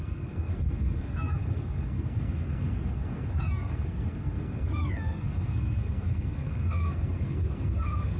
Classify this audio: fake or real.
fake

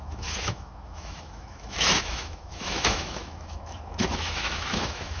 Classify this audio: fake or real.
fake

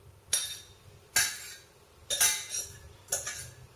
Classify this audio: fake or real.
real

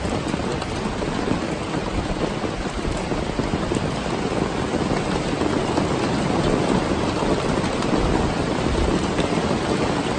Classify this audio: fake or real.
real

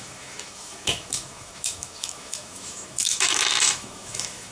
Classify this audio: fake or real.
fake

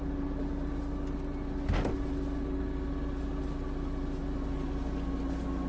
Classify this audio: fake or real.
real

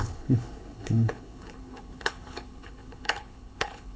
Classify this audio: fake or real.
fake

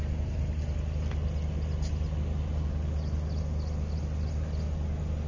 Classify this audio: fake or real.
real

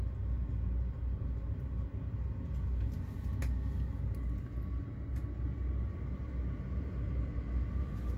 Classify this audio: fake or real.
real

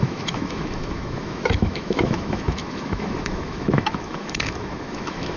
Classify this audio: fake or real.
fake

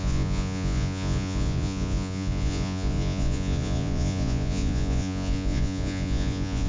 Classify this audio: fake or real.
fake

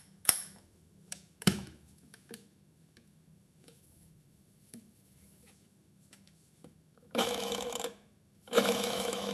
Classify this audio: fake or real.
fake